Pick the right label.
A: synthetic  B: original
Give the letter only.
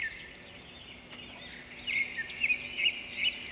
B